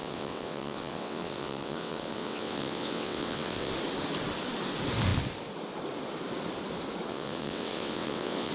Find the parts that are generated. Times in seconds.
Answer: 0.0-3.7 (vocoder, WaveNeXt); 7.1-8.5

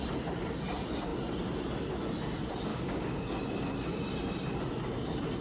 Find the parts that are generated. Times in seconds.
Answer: 2.7-3.3 (codec, DAC)

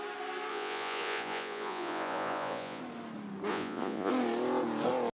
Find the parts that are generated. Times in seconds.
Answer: 0.5-2.8 (vocoder, Vocos); 3.5-4.1

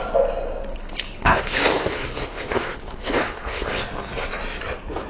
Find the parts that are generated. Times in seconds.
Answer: 0.7-3.8 (codec, HILCodec)

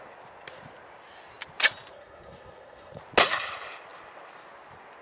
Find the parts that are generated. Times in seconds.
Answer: 1.9-3.0 (codec, SNAC)

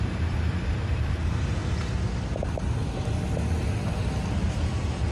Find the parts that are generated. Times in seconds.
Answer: 0.0-1.6 (vocoder, BigVGAN v2)

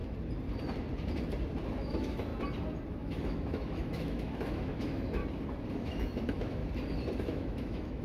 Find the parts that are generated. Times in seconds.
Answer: 1.8-2.3 (autoencoder, DAC-VAE); 2.9-5.2; 5.7-6.6; 7.2-8.0